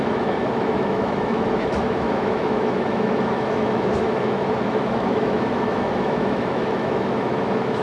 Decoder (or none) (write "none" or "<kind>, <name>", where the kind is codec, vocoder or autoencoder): autoencoder, DAC-VAE